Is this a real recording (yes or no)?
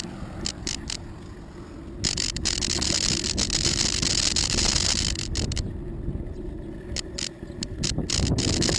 yes